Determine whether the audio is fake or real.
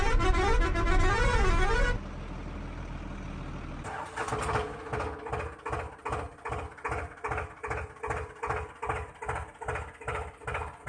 real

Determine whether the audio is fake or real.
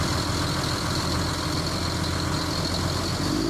real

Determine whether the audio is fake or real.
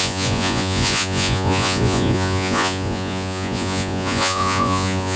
fake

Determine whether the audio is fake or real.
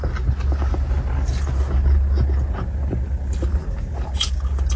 real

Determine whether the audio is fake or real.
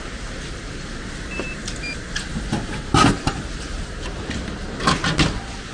real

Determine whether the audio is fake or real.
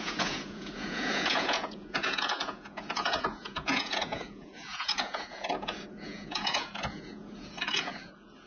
fake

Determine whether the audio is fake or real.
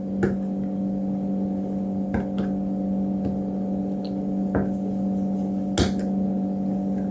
real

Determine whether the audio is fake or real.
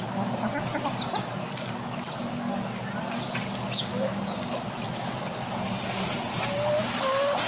real